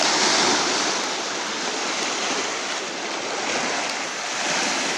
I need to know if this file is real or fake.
real